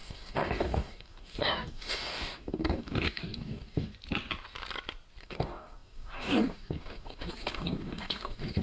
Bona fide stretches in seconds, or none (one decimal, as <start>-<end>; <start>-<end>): 3.9-5.2